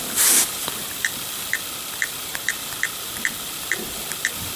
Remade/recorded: recorded